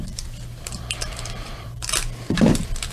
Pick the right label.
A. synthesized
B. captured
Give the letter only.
A